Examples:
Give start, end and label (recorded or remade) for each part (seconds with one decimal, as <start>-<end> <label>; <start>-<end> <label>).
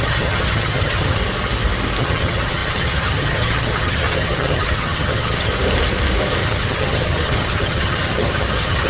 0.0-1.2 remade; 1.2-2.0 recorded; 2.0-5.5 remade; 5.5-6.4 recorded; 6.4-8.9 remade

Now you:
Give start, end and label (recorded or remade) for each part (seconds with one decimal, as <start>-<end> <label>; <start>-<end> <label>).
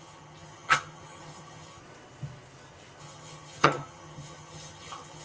0.0-1.8 remade; 1.8-3.0 recorded; 3.0-5.2 remade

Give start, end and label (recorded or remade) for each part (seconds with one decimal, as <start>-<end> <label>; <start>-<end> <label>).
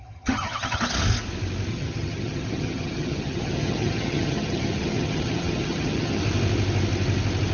0.0-0.8 remade; 0.8-1.7 recorded; 1.7-6.2 remade; 6.2-7.5 recorded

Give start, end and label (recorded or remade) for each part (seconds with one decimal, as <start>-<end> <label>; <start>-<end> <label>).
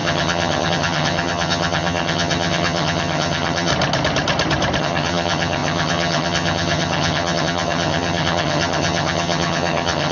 0.0-3.7 remade; 3.7-4.8 recorded; 4.8-10.1 remade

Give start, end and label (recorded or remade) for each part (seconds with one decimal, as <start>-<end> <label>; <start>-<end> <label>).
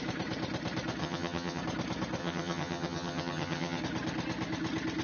0.0-1.0 recorded; 1.0-1.6 remade; 1.6-2.2 recorded; 2.2-3.8 remade; 3.8-5.0 recorded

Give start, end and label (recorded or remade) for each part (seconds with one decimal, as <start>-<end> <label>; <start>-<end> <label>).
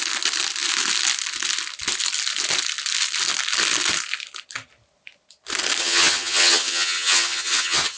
0.0-5.8 recorded; 5.8-8.0 remade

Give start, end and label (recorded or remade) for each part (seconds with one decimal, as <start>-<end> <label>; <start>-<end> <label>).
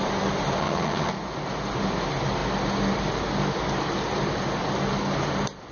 0.0-0.6 recorded; 0.6-1.1 remade; 1.1-5.7 recorded